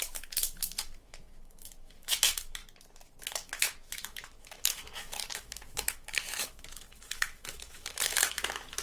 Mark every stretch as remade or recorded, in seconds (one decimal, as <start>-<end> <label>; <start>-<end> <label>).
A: 0.0-2.6 remade; 2.6-3.2 recorded; 3.2-8.8 remade